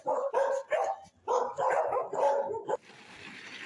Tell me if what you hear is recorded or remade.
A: recorded